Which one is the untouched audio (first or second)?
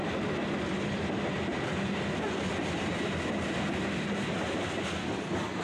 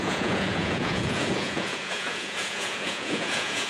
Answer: first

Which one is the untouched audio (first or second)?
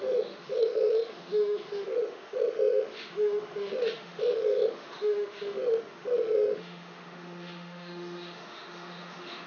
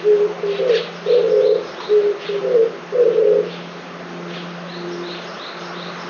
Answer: second